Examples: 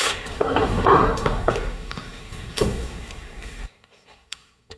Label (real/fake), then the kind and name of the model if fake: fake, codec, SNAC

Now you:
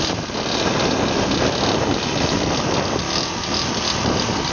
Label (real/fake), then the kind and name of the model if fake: real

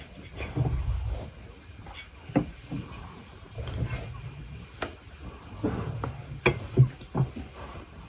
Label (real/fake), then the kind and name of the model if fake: real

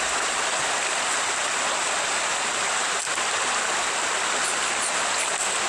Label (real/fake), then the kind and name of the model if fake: real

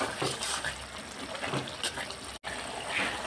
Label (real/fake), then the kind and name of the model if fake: real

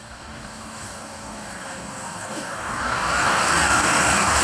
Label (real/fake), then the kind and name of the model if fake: fake, codec, DAC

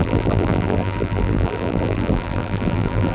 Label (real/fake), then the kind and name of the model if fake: fake, vocoder, BigVGAN v2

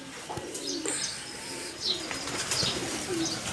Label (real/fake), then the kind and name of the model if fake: real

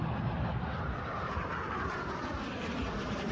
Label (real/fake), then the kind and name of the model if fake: real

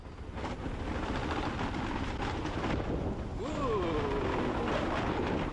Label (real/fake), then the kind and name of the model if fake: real